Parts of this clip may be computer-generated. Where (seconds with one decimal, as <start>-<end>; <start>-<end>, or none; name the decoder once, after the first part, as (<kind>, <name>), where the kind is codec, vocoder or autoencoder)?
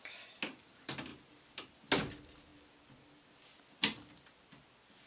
none